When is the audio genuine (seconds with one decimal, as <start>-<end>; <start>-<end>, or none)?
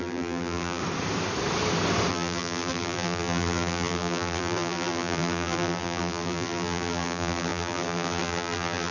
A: 0.8-2.1